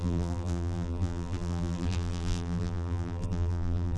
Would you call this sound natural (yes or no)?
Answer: no